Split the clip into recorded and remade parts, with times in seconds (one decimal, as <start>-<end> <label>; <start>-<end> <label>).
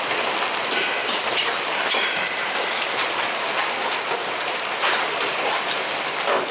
0.0-1.0 recorded; 1.0-3.2 remade; 3.2-4.2 recorded; 4.2-5.3 remade; 5.3-6.5 recorded